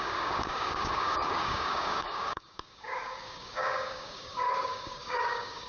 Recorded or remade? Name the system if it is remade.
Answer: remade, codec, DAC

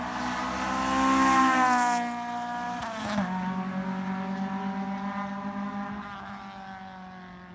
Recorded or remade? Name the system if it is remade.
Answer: recorded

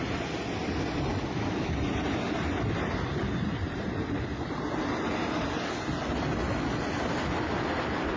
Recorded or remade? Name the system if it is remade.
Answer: recorded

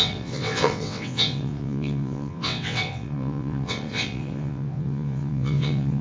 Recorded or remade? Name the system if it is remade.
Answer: remade, vocoder, WaveNeXt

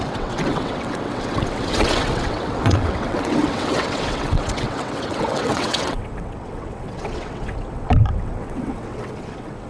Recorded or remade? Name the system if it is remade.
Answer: remade, vocoder, WaveNeXt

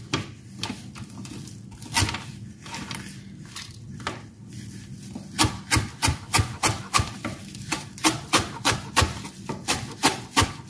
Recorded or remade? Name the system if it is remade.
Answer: remade, vocoder, BigVGAN v2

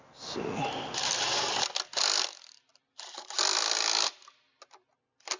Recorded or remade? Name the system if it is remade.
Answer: recorded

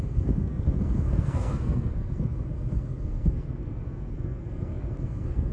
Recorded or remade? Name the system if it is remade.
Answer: remade, codec, SNAC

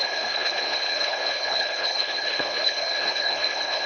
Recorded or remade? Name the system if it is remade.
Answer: remade, codec, HILCodec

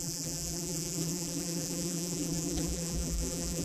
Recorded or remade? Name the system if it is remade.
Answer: remade, vocoder, BigVGAN v2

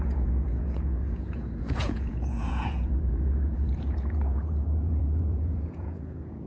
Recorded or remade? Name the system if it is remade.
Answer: remade, vocoder, Vocos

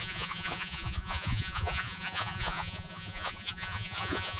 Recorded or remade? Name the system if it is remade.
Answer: remade, vocoder, Vocos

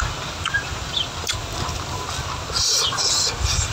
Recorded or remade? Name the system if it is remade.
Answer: recorded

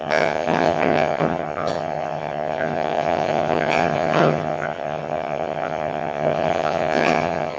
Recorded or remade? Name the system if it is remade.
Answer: remade, vocoder, HiFi-GAN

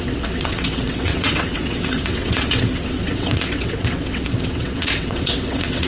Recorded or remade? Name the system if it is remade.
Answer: remade, vocoder, WaveNeXt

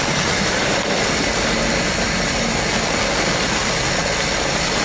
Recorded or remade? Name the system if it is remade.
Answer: recorded